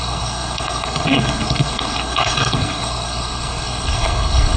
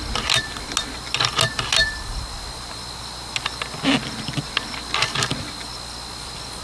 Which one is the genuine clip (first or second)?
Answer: second